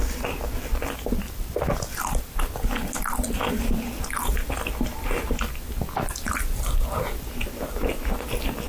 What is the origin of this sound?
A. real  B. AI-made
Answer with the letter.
A